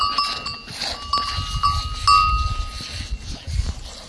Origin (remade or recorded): recorded